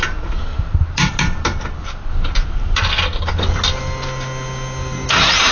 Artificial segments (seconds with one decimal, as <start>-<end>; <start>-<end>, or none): 0.5-1.1